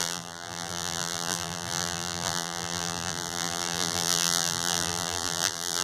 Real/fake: fake